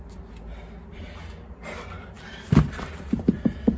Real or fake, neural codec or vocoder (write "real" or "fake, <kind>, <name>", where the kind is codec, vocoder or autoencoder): real